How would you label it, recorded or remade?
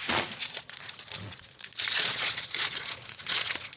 remade